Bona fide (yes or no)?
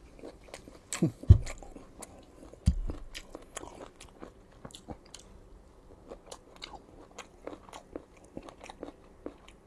yes